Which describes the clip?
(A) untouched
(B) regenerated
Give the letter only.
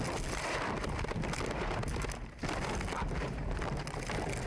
A